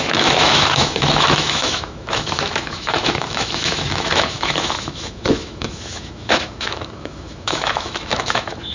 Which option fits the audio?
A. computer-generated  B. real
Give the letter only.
A